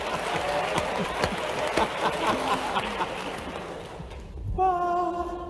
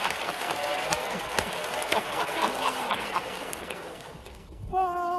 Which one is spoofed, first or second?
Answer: second